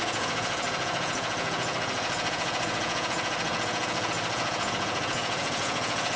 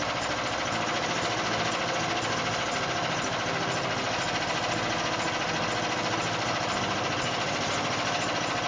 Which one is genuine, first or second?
second